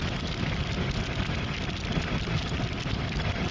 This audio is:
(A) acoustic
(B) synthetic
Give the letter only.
A